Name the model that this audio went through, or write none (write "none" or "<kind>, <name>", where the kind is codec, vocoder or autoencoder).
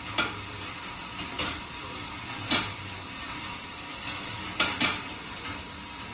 none